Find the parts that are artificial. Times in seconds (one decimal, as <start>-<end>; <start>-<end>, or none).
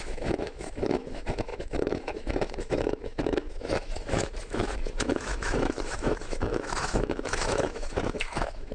0.0-8.7